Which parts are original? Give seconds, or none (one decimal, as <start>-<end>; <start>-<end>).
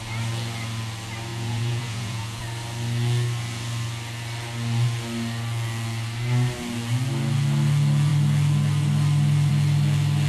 0.0-1.3; 2.4-10.3